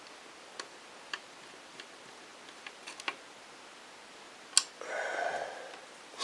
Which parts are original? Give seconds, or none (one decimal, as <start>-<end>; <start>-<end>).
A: 0.0-6.2